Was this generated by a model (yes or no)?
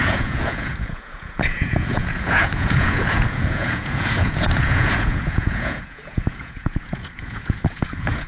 yes